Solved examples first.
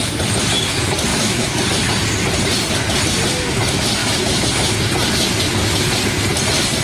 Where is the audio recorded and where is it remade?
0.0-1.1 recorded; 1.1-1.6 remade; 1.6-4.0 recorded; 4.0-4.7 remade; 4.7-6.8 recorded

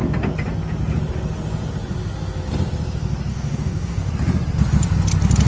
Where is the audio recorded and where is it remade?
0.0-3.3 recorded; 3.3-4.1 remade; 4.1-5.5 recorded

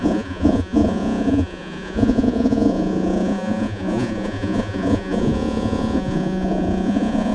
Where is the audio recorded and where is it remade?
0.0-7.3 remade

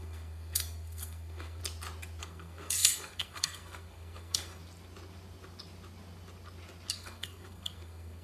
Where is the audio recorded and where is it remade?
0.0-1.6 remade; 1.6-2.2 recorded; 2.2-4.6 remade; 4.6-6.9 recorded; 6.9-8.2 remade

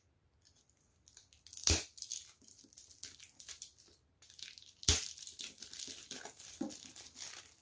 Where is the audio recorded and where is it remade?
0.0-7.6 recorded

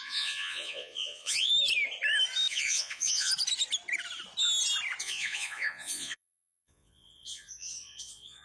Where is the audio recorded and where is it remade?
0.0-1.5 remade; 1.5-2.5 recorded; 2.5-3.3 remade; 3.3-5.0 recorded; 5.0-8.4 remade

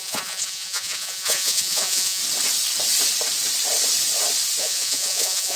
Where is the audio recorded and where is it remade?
0.0-2.2 remade; 2.2-4.6 recorded; 4.6-5.6 remade